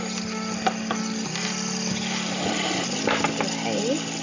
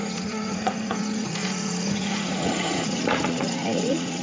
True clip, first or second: first